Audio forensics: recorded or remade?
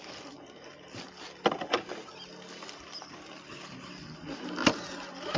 recorded